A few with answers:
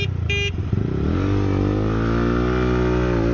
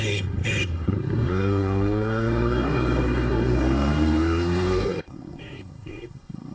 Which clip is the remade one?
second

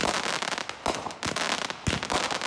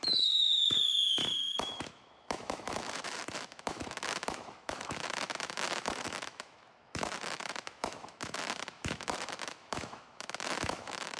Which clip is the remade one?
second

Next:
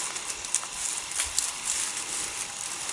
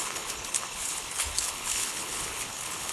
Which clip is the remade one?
second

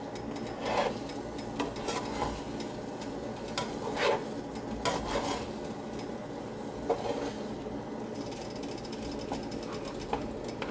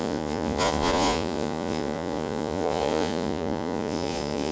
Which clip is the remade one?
second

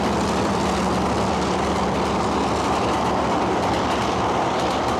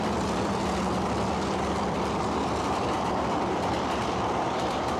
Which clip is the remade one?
second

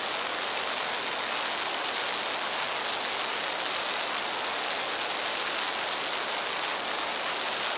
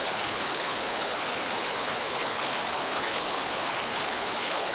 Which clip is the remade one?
second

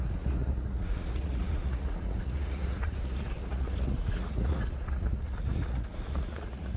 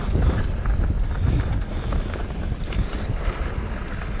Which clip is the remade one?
first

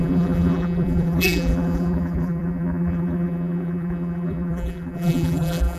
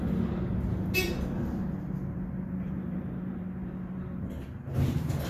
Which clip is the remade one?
first